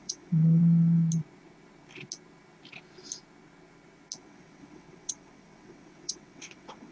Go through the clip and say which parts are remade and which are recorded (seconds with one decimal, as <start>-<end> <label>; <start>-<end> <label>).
0.0-0.6 remade; 0.6-4.2 recorded; 4.2-6.9 remade